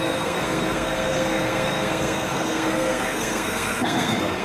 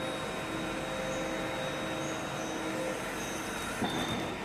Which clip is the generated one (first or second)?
first